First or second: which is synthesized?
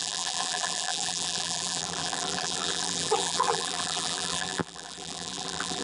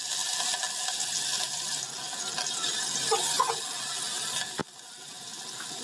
first